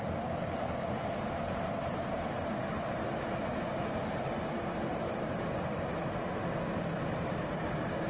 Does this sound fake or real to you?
fake